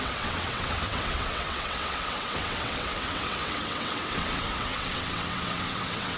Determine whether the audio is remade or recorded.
remade